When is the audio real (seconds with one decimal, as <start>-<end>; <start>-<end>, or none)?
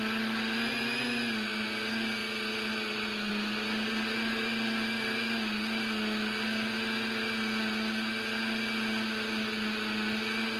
0.0-10.6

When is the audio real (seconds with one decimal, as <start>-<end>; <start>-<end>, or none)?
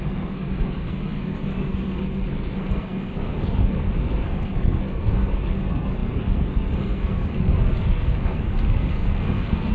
none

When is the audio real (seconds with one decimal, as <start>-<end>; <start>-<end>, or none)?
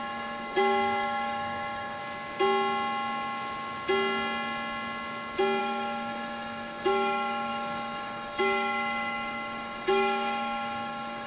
2.0-5.6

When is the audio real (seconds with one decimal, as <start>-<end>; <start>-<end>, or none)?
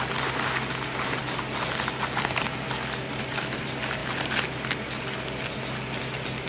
0.0-6.5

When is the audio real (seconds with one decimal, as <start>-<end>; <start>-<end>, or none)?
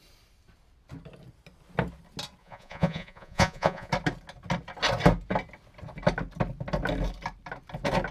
0.0-2.4; 3.9-8.1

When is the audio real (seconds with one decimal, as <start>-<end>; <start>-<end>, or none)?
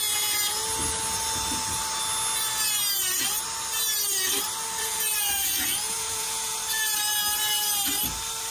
0.6-4.8; 6.6-8.5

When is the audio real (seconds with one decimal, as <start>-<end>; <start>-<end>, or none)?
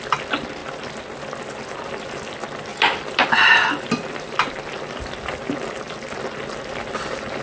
0.0-7.4